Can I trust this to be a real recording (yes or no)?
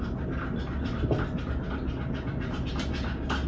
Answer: yes